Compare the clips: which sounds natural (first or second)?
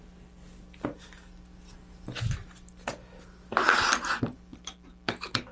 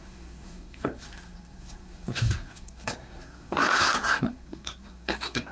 first